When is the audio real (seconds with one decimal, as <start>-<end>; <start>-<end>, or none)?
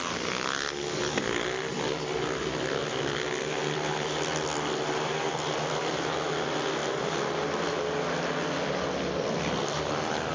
0.0-1.7; 2.8-3.6; 5.8-10.3